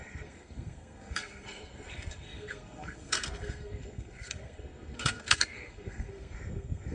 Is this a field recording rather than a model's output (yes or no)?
no